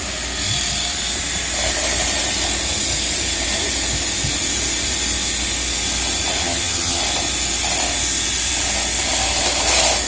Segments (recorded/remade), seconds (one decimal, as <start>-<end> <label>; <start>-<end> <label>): 0.0-6.4 recorded; 6.4-7.0 remade; 7.0-10.1 recorded